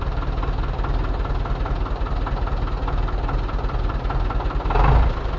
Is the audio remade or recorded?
recorded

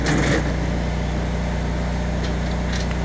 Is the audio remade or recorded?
recorded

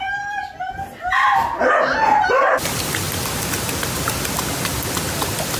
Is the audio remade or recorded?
recorded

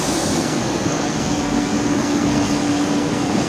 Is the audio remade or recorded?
remade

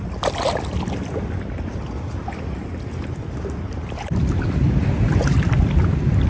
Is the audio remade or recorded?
recorded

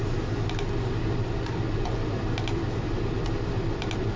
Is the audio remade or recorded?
recorded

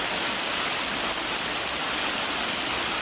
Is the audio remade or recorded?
recorded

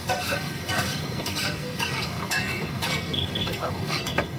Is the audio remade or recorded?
remade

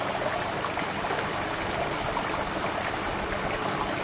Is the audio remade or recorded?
recorded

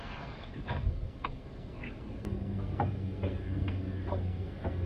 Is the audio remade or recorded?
remade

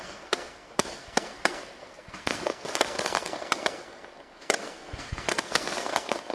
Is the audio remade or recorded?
remade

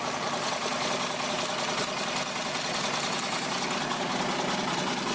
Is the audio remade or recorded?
recorded